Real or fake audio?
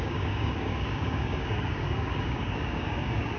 fake